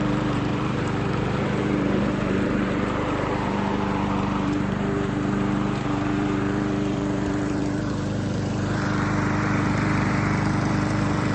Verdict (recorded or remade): remade